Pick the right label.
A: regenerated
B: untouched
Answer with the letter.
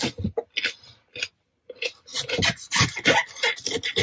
B